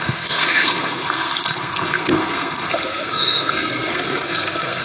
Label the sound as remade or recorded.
remade